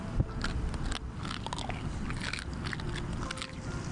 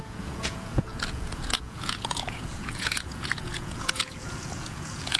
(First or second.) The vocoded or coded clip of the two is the second